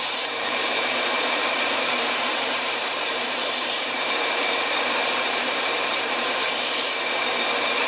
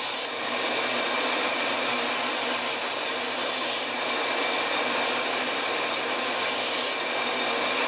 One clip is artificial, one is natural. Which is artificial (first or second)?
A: first